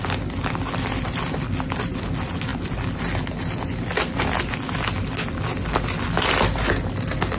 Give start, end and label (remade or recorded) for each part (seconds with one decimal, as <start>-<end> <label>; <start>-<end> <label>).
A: 0.0-7.4 recorded